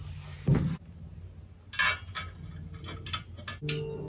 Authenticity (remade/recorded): recorded